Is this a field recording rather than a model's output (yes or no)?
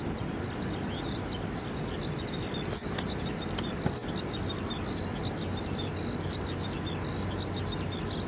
yes